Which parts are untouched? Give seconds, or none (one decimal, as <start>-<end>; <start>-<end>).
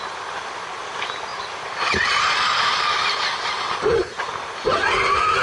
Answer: 0.0-1.3; 4.5-5.4